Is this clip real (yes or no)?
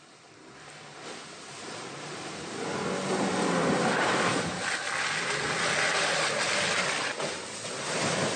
yes